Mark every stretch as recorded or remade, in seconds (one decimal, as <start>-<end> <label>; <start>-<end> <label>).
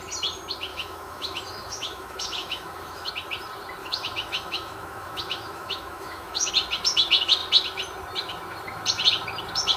0.0-0.7 recorded; 0.7-3.1 remade; 3.1-3.8 recorded; 3.8-6.5 remade; 6.5-9.8 recorded